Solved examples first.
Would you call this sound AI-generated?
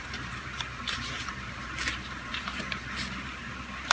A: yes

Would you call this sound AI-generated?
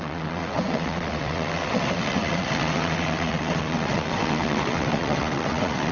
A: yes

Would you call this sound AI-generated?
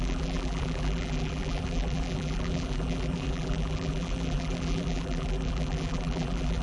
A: yes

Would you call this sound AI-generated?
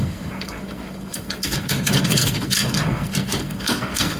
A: yes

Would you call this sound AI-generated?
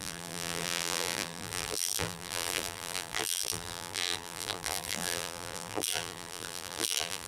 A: yes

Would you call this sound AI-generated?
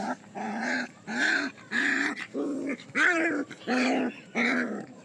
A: yes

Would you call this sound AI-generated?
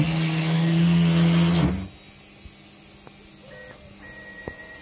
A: no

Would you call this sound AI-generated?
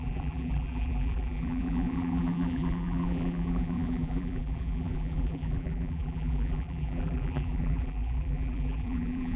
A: yes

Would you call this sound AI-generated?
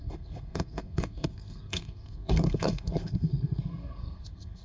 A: yes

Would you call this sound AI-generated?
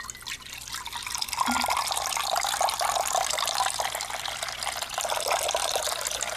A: no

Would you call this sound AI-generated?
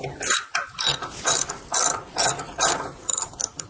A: yes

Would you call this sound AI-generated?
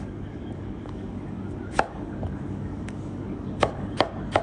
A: yes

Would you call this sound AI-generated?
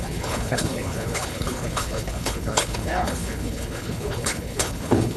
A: yes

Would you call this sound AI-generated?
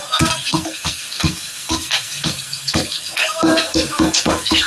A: yes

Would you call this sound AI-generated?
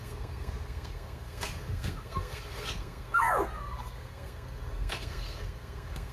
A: yes